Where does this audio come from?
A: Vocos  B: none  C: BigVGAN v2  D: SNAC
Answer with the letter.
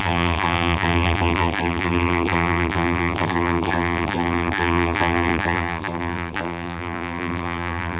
C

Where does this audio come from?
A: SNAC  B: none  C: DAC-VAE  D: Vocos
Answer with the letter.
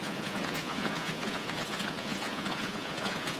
D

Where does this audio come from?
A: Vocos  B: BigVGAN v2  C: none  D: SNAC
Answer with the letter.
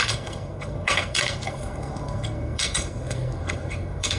D